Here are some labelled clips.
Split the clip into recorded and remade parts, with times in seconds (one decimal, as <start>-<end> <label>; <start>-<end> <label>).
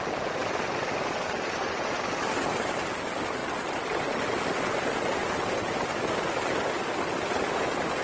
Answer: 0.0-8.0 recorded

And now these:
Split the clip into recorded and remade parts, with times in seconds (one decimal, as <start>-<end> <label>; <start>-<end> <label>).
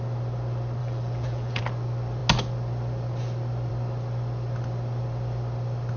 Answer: 0.0-0.8 recorded; 0.8-1.6 remade; 1.6-6.0 recorded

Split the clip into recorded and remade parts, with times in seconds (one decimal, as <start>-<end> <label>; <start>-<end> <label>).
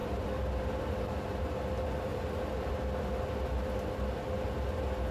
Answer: 0.0-1.4 remade; 1.4-2.1 recorded; 2.1-2.7 remade; 2.7-5.1 recorded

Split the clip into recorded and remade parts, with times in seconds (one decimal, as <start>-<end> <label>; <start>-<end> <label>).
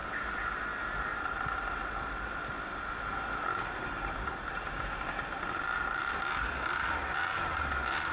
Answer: 0.0-0.6 remade; 0.6-8.1 recorded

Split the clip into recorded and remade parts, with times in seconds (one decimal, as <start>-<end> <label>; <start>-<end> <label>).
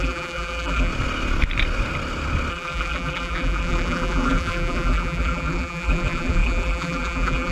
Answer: 0.0-0.9 remade; 0.9-2.5 recorded; 2.5-7.5 remade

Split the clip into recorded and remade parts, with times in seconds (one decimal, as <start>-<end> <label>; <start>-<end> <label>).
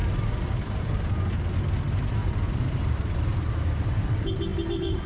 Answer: 0.0-1.1 remade; 1.1-2.2 recorded; 2.2-3.5 remade; 3.5-4.5 recorded; 4.5-5.1 remade